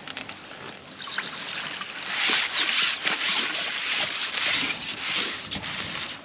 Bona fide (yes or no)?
yes